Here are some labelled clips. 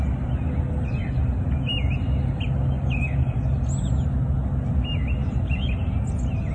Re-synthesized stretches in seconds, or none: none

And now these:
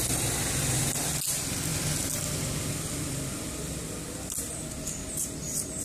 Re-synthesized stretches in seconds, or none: none

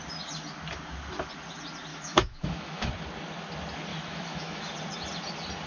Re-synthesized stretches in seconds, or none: 1.9-2.9 (autoencoder, DAC-VAE); 3.9-4.7